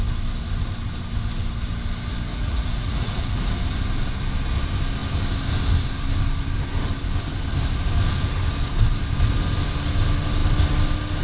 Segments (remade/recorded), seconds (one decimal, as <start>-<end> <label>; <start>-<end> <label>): 0.0-2.3 recorded; 2.3-3.5 remade; 3.5-11.2 recorded